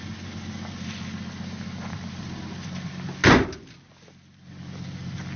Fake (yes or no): no